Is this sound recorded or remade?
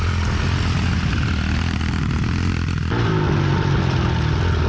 recorded